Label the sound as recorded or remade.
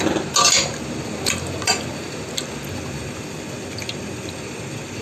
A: recorded